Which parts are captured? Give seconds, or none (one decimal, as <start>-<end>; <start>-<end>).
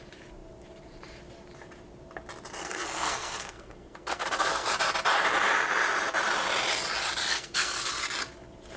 0.0-2.6; 4.7-7.3; 7.9-8.8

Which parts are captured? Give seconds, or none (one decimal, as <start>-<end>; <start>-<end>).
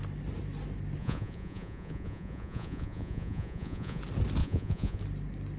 0.0-1.0; 4.0-4.4; 5.0-5.6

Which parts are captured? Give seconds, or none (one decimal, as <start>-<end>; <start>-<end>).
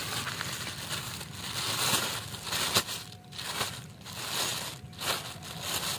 0.0-6.0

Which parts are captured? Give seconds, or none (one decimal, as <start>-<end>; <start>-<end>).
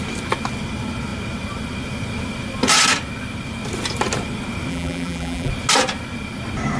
0.0-4.7; 5.5-6.8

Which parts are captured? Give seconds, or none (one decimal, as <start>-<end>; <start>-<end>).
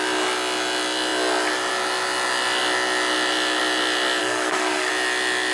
0.0-4.2; 4.9-5.5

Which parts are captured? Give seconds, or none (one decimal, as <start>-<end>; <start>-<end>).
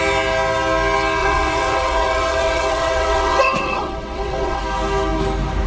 0.0-1.2; 4.6-5.7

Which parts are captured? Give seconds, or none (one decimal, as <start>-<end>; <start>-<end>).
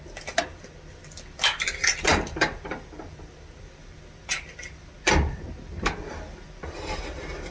0.0-7.5